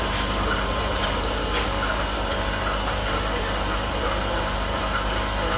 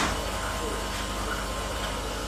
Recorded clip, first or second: second